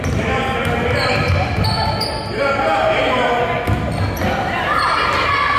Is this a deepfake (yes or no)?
no